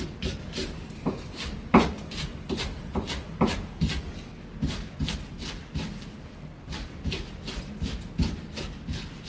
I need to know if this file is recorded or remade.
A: recorded